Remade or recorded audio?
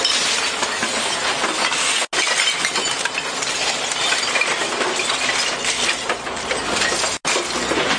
recorded